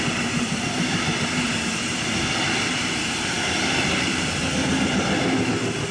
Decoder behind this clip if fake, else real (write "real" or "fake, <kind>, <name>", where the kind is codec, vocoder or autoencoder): real